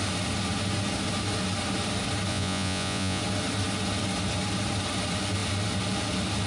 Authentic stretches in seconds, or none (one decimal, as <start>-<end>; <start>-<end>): 0.0-2.3; 3.2-6.5

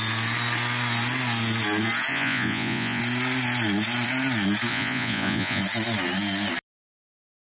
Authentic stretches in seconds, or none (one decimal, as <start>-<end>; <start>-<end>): 0.0-2.1; 3.0-4.7; 5.6-7.5

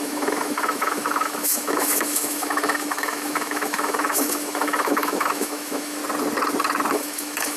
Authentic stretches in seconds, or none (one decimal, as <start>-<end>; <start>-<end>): 6.0-6.9

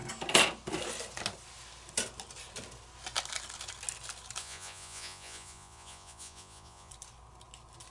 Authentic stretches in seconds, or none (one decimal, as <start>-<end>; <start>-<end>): 0.0-4.4; 6.9-7.9

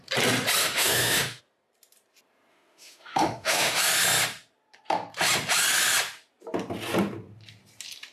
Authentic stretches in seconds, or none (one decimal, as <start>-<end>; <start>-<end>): 0.0-0.6; 1.4-2.5; 3.8-8.1

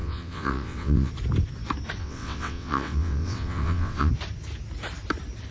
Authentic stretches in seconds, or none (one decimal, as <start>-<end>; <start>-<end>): 1.1-2.0; 4.1-5.5

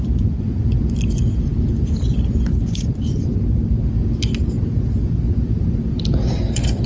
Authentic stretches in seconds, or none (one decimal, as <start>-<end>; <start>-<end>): 0.0-6.9

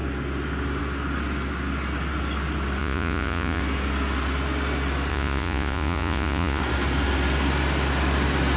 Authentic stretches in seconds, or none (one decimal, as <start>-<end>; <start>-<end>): 0.0-2.8; 3.6-5.1; 6.6-8.6